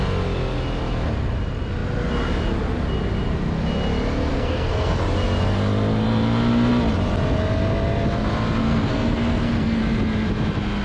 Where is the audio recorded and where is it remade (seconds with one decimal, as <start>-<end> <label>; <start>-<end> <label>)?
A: 0.0-4.3 recorded; 4.3-5.0 remade; 5.0-8.6 recorded; 8.6-9.8 remade; 9.8-10.8 recorded